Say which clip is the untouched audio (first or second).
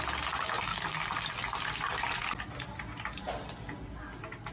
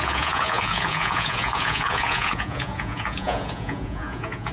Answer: first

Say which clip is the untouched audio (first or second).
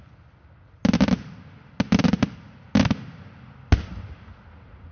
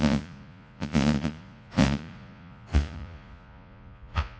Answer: first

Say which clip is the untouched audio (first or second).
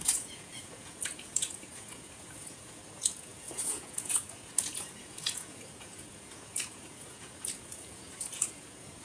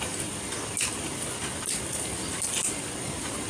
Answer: second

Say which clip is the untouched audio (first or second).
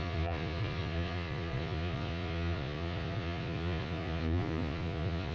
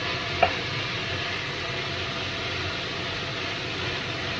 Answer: second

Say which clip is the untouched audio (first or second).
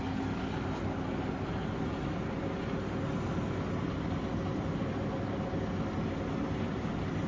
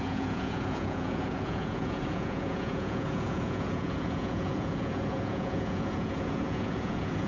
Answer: first